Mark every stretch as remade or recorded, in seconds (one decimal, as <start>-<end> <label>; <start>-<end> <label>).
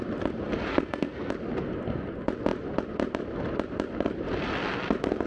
0.0-0.7 recorded; 0.7-1.3 remade; 1.3-5.3 recorded